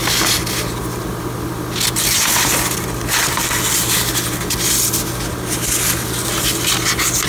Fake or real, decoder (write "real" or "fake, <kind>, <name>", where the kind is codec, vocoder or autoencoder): real